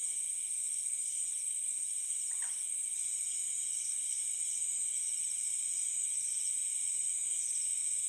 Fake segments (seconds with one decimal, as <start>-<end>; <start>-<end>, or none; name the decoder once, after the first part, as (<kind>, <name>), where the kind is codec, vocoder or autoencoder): none